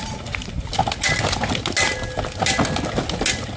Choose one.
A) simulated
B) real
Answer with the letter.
B